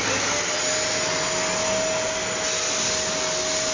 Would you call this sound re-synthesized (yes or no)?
no